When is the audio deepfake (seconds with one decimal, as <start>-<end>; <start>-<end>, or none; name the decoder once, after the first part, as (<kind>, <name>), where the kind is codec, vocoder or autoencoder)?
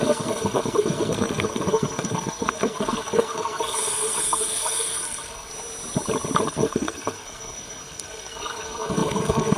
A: 0.0-5.5 (codec, SNAC); 6.4-9.6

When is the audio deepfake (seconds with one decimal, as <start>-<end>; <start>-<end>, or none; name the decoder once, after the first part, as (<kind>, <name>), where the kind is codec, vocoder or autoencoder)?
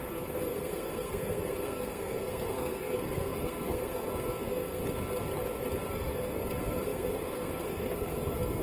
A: 0.0-4.8 (codec, SNAC); 5.9-8.6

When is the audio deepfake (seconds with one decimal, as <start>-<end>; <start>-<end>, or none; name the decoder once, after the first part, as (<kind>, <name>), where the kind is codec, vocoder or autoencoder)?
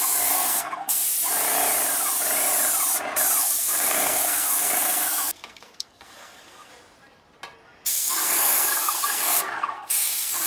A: 0.0-1.0 (codec, SNAC); 3.4-6.7; 7.9-10.5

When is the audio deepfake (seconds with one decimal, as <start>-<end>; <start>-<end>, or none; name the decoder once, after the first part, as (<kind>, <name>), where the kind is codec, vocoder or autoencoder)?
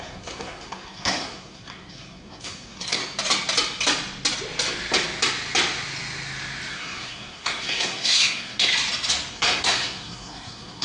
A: 0.0-3.0 (codec, SNAC); 6.7-8.7; 9.3-10.8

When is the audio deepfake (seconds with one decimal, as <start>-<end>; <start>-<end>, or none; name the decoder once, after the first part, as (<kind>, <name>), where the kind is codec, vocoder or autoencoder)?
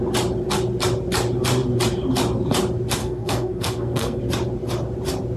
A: 3.0-4.2 (codec, SNAC)